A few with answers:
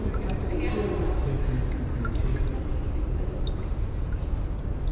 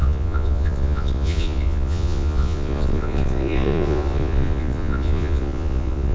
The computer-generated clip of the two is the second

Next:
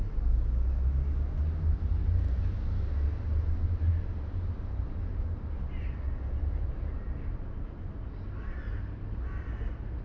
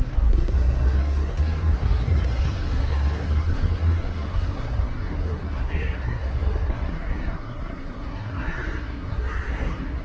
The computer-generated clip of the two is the second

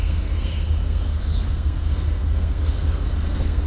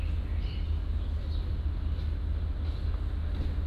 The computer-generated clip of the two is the first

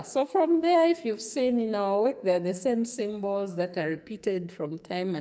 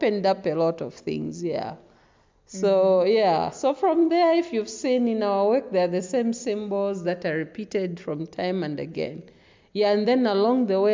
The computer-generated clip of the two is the first